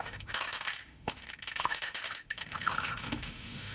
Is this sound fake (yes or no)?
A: yes